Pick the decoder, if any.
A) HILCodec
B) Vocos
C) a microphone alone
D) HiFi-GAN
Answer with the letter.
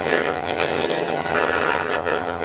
D